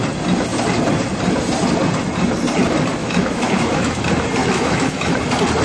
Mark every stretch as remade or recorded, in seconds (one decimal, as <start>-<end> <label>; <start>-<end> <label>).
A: 0.0-3.0 recorded; 3.0-4.0 remade; 4.0-4.4 recorded; 4.4-5.1 remade; 5.1-5.6 recorded